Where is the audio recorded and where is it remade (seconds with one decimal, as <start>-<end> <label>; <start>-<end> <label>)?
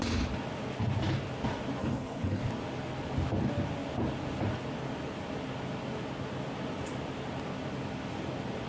0.0-1.8 recorded; 1.8-2.4 remade; 2.4-8.7 recorded